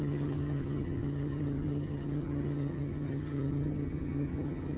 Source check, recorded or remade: remade